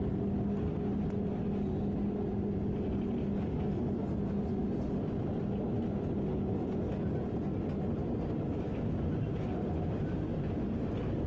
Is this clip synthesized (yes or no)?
no